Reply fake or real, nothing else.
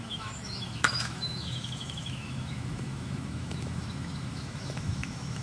fake